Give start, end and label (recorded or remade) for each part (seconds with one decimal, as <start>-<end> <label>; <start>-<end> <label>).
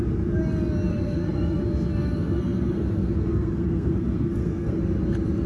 0.0-0.9 recorded; 0.9-1.6 remade; 1.6-2.0 recorded; 2.0-4.8 remade; 4.8-5.5 recorded